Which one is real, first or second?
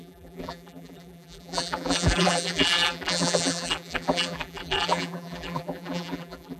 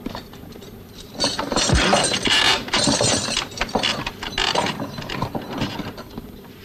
second